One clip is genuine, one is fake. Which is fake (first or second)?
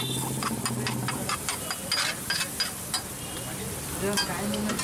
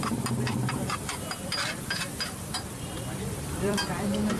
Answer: second